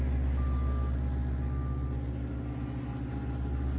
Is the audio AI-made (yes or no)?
no